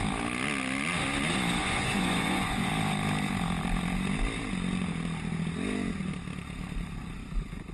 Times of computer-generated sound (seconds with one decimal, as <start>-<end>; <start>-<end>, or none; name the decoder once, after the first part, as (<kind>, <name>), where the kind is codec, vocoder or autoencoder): 1.6-2.7 (vocoder, Vocos)